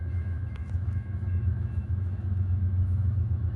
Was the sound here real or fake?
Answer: fake